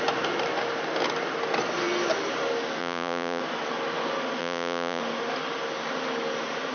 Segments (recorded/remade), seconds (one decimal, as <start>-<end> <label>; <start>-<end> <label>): 0.0-2.8 recorded; 2.8-3.4 remade; 3.4-4.4 recorded; 4.4-5.0 remade; 5.0-6.7 recorded